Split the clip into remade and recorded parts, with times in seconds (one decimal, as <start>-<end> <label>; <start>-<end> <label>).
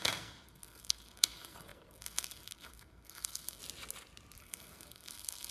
0.0-3.6 remade; 3.6-4.4 recorded; 4.4-5.5 remade